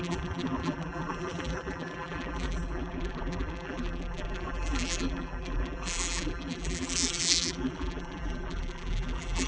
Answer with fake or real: fake